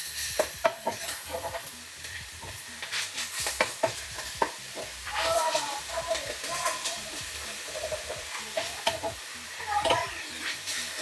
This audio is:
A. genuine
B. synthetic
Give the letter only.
B